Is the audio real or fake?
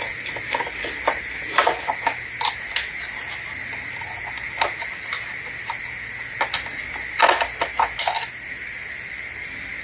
real